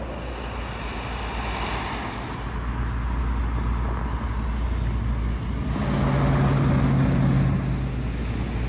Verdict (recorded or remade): recorded